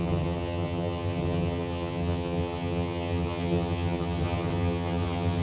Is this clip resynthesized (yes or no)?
yes